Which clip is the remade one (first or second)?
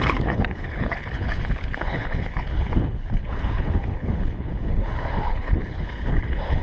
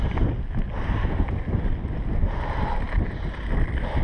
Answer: first